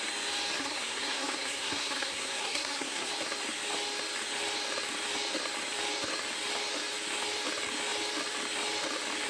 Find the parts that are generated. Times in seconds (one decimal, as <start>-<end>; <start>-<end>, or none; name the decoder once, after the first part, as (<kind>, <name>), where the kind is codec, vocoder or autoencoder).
0.6-3.1 (codec, SNAC)